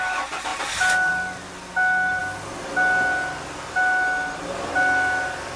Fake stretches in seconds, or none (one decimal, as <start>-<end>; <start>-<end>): none